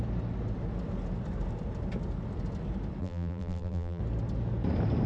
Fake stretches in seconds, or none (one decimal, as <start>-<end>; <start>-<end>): 3.0-4.0